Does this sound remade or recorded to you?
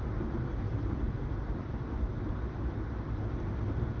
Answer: recorded